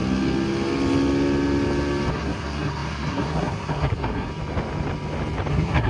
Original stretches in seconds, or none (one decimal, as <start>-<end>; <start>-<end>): 0.0-2.1; 4.3-5.5